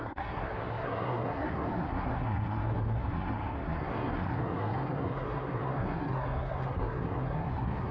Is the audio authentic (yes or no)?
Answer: no